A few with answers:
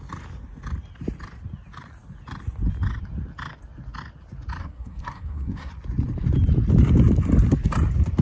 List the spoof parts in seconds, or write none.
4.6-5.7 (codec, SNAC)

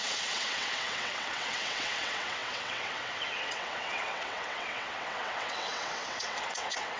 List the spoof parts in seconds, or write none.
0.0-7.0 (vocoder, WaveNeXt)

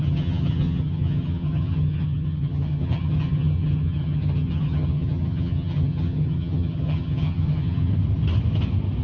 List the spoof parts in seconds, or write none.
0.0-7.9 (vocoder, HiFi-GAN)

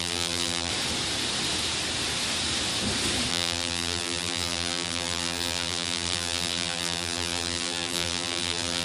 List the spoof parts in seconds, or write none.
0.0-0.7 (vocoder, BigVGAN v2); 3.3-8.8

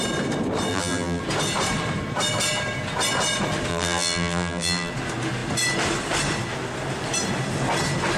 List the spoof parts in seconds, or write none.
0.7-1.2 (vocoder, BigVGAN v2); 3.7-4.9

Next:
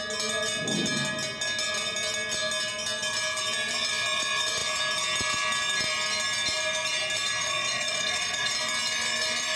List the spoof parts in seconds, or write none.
7.4-8.5 (vocoder, Vocos)

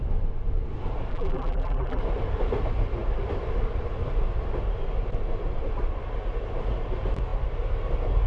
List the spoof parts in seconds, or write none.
1.1-2.0 (vocoder, BigVGAN v2)